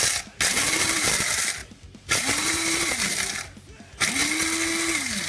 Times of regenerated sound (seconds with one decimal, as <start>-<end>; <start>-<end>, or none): 0.5-1.1; 1.6-2.9